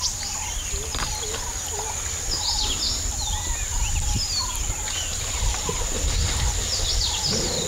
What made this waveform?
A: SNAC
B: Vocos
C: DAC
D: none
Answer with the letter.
D